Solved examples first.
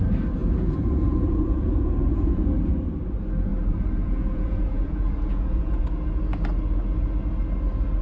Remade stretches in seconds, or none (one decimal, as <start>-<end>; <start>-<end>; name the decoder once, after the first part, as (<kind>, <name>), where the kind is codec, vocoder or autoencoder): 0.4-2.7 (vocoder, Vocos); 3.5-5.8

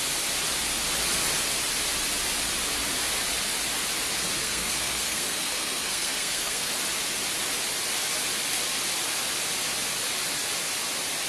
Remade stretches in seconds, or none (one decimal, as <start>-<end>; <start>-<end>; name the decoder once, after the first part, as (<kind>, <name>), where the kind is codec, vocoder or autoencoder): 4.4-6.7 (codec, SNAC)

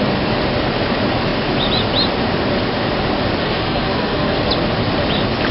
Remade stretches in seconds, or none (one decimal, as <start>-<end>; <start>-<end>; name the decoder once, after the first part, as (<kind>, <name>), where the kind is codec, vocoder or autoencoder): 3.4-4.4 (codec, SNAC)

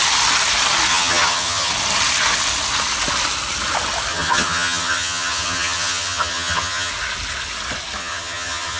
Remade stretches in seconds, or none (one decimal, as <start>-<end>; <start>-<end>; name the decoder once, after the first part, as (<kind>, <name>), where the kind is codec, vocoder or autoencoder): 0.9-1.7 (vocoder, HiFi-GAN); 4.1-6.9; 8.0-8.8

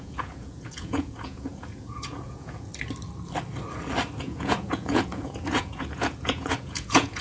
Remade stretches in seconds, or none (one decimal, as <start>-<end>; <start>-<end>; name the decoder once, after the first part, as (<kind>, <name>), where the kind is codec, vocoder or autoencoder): 0.0-2.7 (vocoder, Vocos); 4.2-7.2

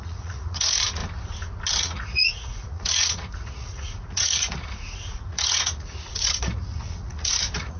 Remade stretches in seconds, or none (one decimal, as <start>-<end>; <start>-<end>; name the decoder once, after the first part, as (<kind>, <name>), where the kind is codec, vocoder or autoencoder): 0.0-1.0 (vocoder, Vocos); 1.7-7.8

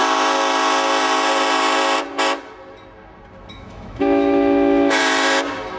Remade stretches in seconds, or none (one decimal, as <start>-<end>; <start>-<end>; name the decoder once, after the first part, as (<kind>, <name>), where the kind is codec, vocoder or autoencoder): 3.5-5.0 (autoencoder, DAC-VAE)

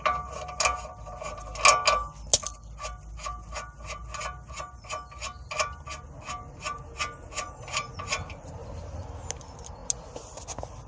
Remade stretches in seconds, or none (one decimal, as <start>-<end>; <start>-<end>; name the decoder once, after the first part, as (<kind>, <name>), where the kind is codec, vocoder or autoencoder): none